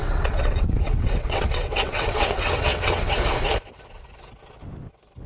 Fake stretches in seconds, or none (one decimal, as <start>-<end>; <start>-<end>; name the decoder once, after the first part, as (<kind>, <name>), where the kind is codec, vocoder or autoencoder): 0.0-3.2 (vocoder, WaveNeXt)